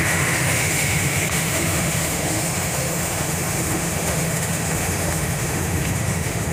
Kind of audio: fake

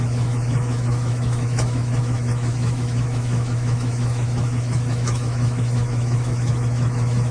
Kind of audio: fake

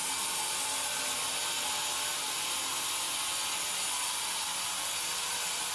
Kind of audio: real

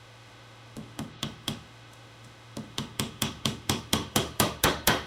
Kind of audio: fake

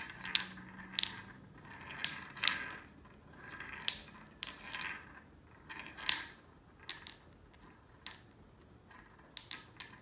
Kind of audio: real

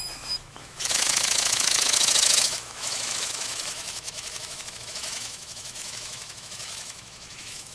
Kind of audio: fake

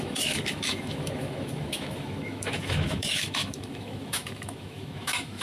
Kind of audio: fake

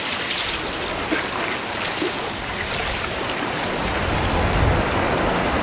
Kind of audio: real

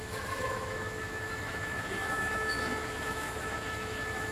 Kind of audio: fake